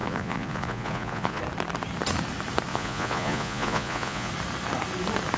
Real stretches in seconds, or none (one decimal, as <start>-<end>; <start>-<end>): 1.4-2.7; 4.3-5.4